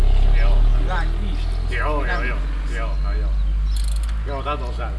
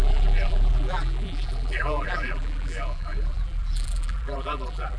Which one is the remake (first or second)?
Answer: second